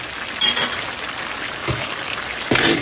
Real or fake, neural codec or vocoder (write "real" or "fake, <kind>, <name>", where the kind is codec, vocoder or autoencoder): real